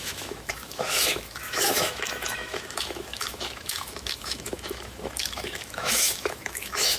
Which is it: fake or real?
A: fake